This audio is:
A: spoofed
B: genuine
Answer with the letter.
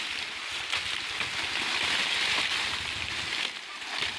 B